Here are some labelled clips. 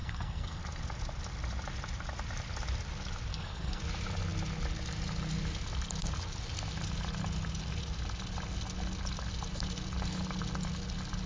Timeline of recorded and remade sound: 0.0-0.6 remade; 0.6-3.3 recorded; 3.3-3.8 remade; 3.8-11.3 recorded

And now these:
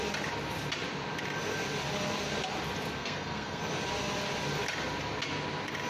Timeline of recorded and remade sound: 0.0-3.0 recorded; 3.0-3.6 remade; 3.6-5.9 recorded

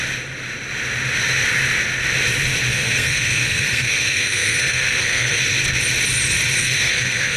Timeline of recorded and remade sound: 0.0-2.7 recorded; 2.7-5.4 remade; 5.4-6.6 recorded; 6.6-7.4 remade

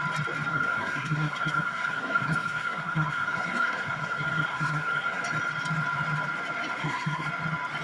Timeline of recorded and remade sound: 0.0-0.5 recorded; 0.5-5.2 remade; 5.2-6.8 recorded; 6.8-7.3 remade; 7.3-7.8 recorded